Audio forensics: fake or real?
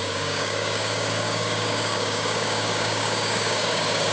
fake